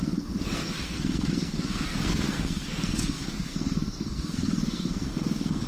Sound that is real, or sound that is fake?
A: fake